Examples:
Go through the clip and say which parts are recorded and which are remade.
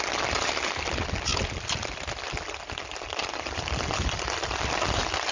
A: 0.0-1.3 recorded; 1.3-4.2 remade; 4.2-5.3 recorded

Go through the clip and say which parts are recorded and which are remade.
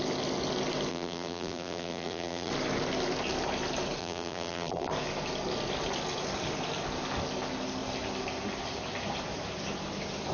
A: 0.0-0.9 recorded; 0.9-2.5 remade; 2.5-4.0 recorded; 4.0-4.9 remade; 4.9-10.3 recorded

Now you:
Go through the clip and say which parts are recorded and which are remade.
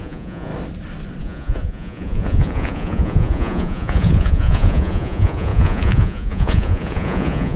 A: 0.0-0.5 remade; 0.5-1.2 recorded; 1.2-7.6 remade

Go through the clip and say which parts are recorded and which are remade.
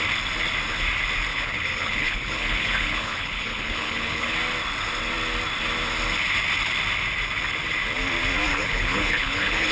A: 0.0-1.3 recorded; 1.3-4.3 remade; 4.3-8.5 recorded; 8.5-9.7 remade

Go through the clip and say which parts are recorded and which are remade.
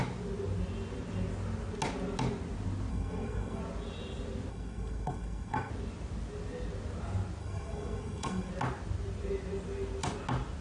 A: 0.0-2.9 recorded; 2.9-3.6 remade; 3.6-4.5 recorded; 4.5-5.7 remade; 5.7-7.4 recorded; 7.4-8.5 remade; 8.5-10.6 recorded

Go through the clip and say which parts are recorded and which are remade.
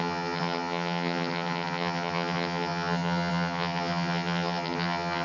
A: 0.0-5.2 remade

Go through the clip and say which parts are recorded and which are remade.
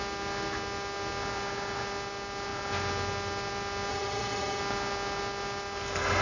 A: 0.0-3.9 recorded; 3.9-4.6 remade; 4.6-6.2 recorded